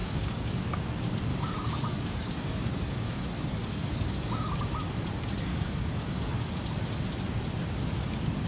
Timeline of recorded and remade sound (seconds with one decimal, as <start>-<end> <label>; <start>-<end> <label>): 0.0-0.6 remade; 0.6-1.3 recorded; 1.3-4.5 remade; 4.5-5.5 recorded; 5.5-6.5 remade; 6.5-8.5 recorded